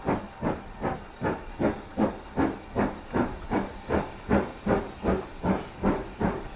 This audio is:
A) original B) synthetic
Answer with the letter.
A